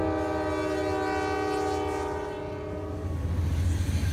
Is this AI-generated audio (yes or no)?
no